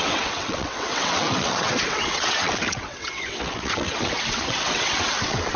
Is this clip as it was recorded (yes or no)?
no